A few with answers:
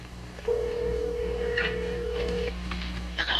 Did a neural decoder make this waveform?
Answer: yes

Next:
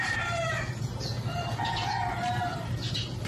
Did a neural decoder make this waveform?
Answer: no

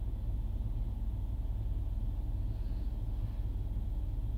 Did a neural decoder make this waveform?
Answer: no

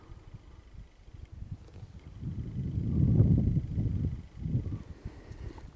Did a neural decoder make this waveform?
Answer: no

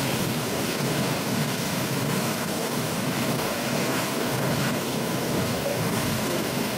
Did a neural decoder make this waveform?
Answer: yes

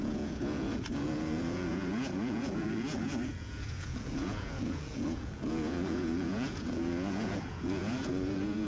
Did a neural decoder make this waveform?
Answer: yes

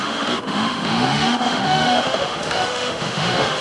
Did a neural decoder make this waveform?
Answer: yes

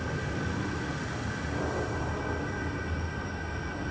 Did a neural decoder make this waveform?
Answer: no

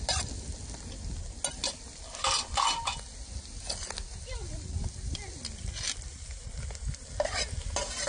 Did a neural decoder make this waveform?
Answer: no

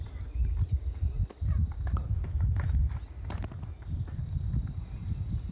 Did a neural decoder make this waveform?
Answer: no